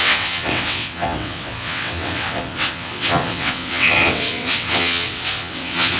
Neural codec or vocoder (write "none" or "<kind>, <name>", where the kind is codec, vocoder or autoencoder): vocoder, WaveNeXt